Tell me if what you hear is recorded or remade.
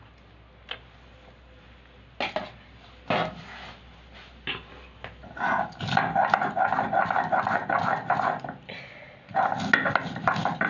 recorded